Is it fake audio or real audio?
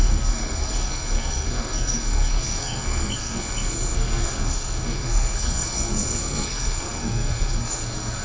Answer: fake